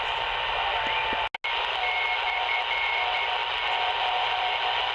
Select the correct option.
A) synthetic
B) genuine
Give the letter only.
B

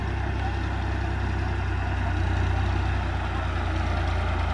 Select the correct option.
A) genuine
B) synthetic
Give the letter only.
A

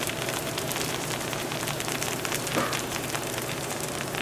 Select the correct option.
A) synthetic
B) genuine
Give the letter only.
A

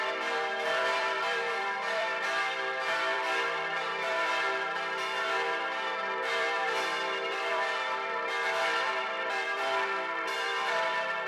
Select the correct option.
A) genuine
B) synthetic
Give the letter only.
B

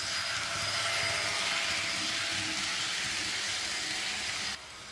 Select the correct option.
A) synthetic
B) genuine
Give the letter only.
B